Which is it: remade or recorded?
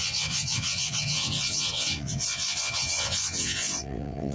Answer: remade